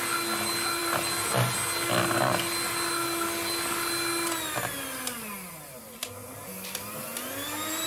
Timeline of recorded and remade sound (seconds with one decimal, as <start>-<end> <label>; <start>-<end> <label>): 0.0-7.9 recorded